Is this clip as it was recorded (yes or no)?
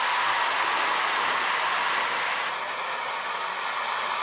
yes